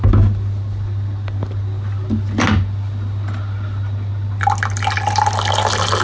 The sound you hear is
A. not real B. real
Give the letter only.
B